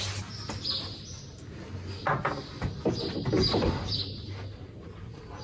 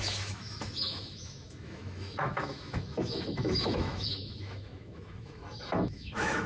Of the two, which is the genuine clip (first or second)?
first